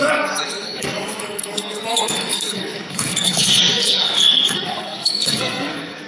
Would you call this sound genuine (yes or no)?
no